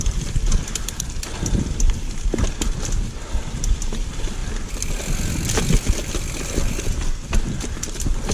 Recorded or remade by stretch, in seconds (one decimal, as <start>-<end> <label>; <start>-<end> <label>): 0.0-8.3 recorded